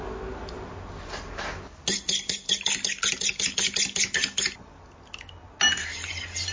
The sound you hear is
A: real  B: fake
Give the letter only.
A